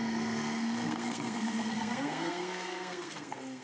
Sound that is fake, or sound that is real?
fake